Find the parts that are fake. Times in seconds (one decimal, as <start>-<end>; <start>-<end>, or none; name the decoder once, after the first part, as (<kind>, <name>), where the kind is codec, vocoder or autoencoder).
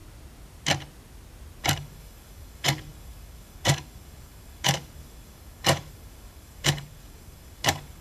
1.6-8.0 (codec, DAC)